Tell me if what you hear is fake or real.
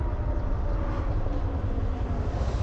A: real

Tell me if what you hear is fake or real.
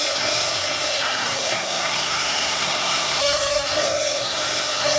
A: fake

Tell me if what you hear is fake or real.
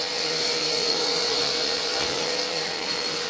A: fake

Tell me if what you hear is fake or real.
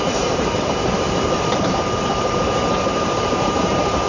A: fake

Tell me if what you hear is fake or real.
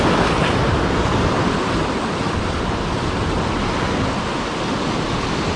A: real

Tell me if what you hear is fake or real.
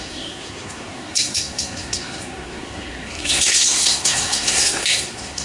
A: fake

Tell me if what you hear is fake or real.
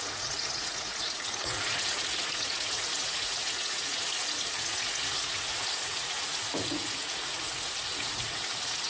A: fake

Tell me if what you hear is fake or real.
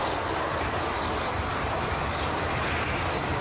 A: real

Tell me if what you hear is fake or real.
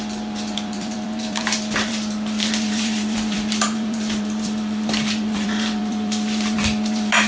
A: fake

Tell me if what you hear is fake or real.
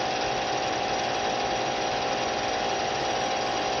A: real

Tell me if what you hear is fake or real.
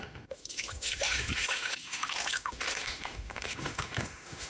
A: fake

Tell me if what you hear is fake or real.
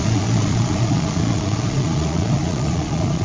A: fake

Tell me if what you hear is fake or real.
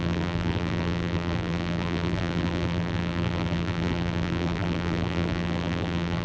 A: fake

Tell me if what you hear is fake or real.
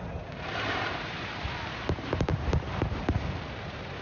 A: fake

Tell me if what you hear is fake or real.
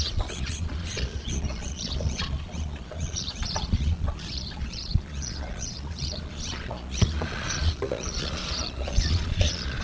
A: fake